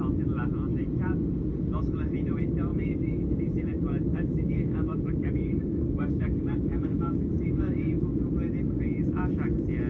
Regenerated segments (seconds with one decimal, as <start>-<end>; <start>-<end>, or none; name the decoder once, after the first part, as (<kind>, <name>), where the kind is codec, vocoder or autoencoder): 2.7-3.3 (autoencoder, DAC-VAE); 4.1-8.2